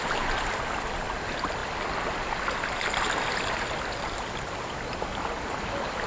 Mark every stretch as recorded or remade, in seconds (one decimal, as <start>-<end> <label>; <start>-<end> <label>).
0.0-6.1 recorded